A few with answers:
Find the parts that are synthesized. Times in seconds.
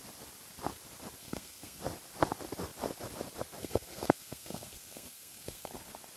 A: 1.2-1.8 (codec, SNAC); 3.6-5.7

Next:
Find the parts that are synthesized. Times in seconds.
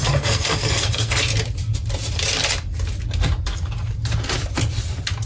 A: 0.0-1.2 (codec, SNAC)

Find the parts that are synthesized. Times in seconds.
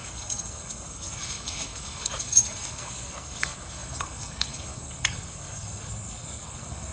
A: 0.0-6.9 (codec, SNAC)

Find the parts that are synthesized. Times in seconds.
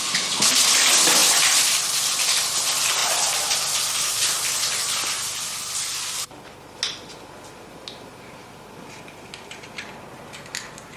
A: none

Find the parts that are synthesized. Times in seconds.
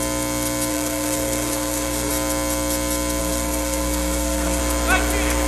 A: 0.7-2.1 (codec, SNAC); 3.2-4.6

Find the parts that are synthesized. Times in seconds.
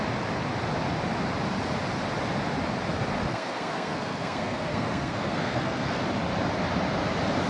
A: 3.3-6.0 (codec, SNAC)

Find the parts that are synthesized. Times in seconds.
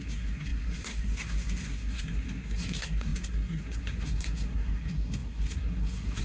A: 0.0-6.2 (codec, SNAC)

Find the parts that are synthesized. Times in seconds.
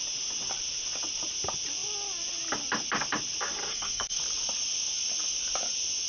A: 3.7-4.2 (codec, SNAC)